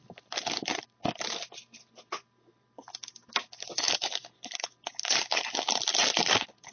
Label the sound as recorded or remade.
recorded